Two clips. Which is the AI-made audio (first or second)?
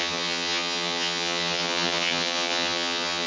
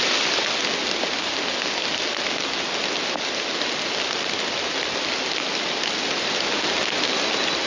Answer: first